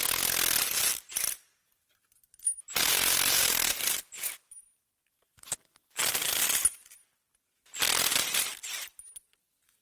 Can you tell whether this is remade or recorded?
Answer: recorded